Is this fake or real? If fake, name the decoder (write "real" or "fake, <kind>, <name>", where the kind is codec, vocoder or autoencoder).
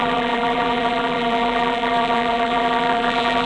fake, vocoder, BigVGAN v2